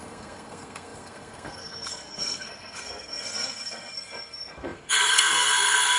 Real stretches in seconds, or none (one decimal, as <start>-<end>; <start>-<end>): none